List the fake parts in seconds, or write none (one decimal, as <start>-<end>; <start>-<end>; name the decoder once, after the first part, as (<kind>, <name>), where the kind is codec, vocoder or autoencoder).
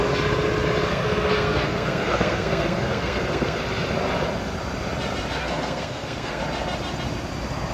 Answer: 0.9-3.6 (codec, SNAC); 5.4-6.4